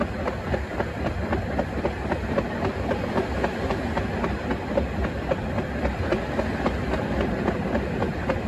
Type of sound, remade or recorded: recorded